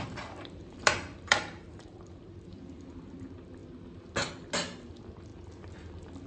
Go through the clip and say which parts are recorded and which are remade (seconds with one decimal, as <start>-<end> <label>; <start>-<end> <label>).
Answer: 0.0-0.6 recorded; 0.6-2.9 remade; 2.9-6.3 recorded